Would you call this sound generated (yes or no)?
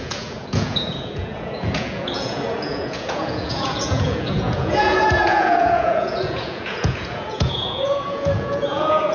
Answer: yes